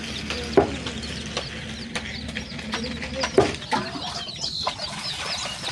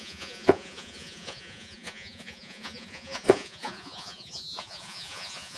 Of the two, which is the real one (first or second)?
first